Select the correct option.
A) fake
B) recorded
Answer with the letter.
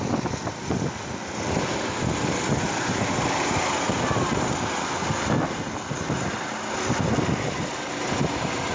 B